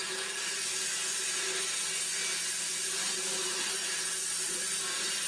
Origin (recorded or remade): recorded